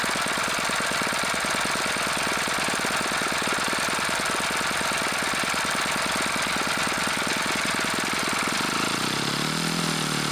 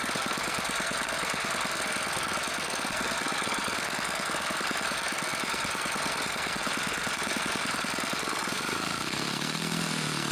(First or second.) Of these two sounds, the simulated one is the second